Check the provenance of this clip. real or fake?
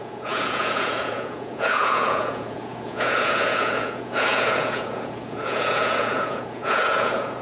fake